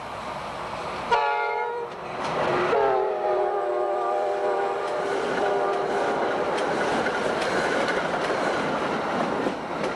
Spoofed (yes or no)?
yes